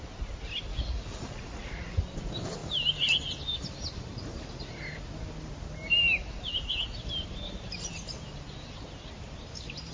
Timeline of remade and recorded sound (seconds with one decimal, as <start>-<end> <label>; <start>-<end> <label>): 0.0-0.7 recorded; 0.7-2.0 remade; 2.0-9.9 recorded